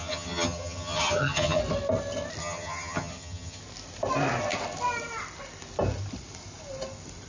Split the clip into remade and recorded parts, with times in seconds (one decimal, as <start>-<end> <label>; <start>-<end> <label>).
0.0-1.6 remade; 1.6-2.4 recorded; 2.4-3.6 remade; 3.6-7.3 recorded